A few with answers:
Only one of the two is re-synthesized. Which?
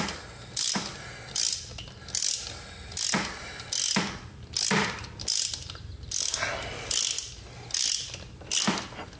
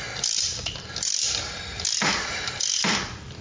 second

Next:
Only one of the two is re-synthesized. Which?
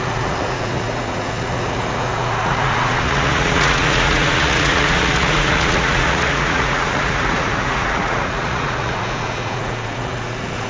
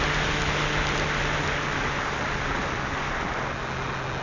first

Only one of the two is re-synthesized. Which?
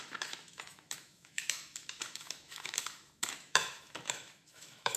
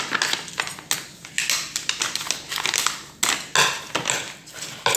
first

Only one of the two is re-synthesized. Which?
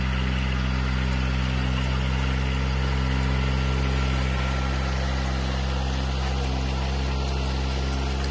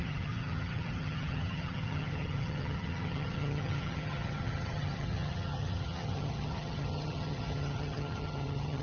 second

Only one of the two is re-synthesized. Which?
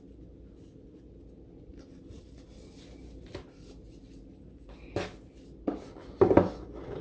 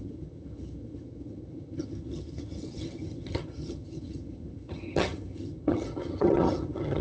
second